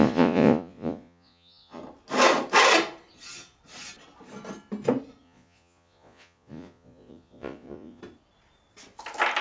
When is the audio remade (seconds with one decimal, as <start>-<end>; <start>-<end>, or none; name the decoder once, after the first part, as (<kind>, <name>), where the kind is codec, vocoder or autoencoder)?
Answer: 0.0-1.8 (vocoder, Vocos); 5.2-8.0